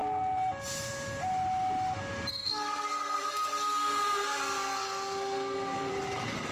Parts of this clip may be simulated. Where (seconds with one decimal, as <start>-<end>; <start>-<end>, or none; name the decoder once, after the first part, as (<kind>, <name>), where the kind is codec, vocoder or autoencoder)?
2.3-5.9 (codec, SNAC)